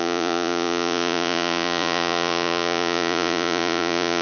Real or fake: fake